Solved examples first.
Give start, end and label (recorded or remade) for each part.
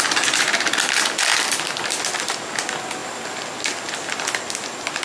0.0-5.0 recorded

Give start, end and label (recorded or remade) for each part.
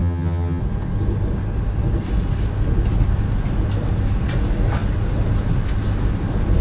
0.0-0.6 remade; 0.6-6.6 recorded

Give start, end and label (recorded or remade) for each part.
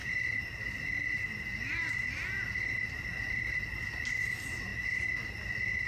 0.0-5.9 recorded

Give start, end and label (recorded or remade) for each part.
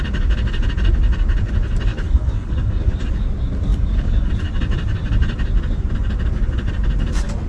0.0-1.9 recorded; 1.9-2.9 remade; 2.9-3.7 recorded; 3.7-4.3 remade; 4.3-7.5 recorded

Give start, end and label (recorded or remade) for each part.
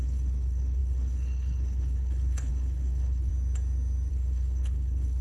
0.0-3.3 remade; 3.3-4.1 recorded; 4.1-5.2 remade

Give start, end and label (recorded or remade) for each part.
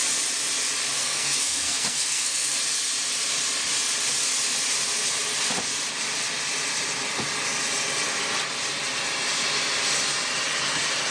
0.0-1.0 recorded; 1.0-2.6 remade; 2.6-11.1 recorded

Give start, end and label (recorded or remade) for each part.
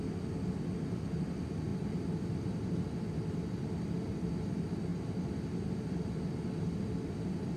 0.0-7.6 recorded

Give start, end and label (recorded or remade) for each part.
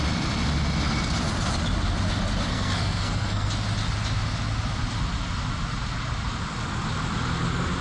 0.0-2.5 recorded; 2.5-3.5 remade; 3.5-7.8 recorded